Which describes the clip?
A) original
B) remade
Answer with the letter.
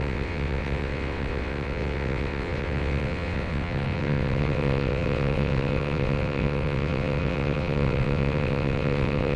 B